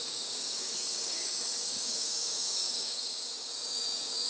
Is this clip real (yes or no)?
no